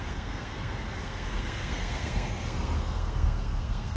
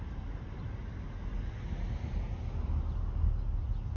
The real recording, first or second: second